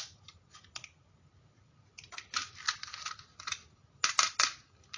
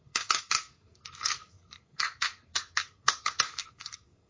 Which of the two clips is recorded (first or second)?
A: first